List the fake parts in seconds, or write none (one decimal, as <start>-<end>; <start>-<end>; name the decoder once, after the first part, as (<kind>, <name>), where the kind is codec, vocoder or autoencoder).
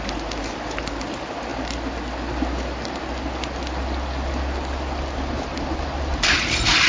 none